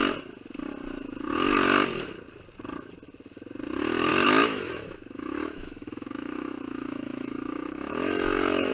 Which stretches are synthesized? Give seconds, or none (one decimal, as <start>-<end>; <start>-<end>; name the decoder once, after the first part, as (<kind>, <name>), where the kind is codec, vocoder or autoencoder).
4.1-8.7 (autoencoder, DAC-VAE)